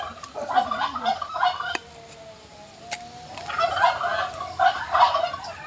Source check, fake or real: real